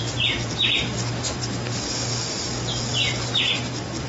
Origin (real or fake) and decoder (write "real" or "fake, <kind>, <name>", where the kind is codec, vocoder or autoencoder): real